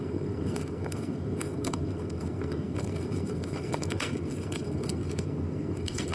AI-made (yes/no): yes